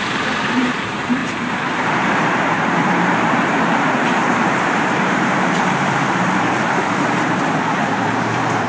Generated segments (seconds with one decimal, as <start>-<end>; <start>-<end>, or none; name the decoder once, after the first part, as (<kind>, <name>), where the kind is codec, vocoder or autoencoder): 0.0-8.7 (vocoder, BigVGAN v2)